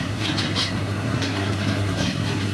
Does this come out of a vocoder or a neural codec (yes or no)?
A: yes